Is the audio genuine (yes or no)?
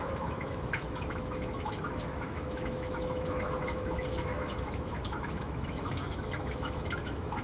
no